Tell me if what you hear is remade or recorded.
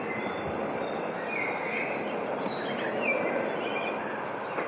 recorded